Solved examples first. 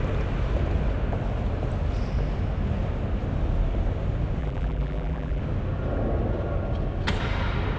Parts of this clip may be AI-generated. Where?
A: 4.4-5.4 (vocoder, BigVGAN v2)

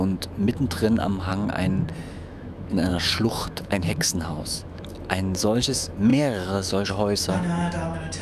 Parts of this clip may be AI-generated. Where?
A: 0.0-1.3 (autoencoder, DAC-VAE); 2.1-8.2

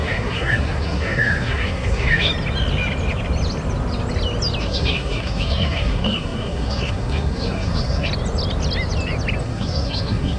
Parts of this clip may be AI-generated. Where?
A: 0.0-2.3 (codec, SNAC); 4.6-8.1; 9.4-10.4

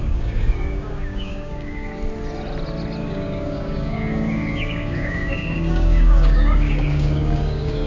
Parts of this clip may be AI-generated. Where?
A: 0.0-1.9 (codec, DAC); 3.0-7.9

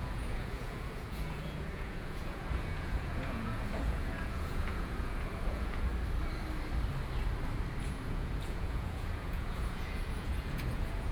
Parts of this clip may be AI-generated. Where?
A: 0.0-5.9 (vocoder, Vocos); 7.8-11.1

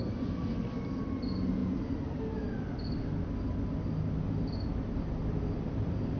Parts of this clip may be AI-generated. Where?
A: none

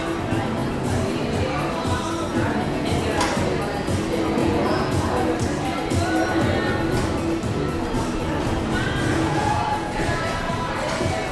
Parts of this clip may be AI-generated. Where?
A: 2.3-2.9 (vocoder, Vocos); 4.4-5.3; 9.1-10.5

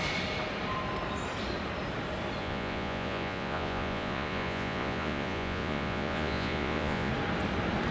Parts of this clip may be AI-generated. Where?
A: 2.4-7.1 (vocoder, Vocos)